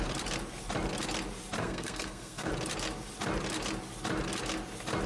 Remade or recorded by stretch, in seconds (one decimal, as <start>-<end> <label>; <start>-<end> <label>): 0.0-1.6 recorded; 1.6-2.5 remade; 2.5-5.1 recorded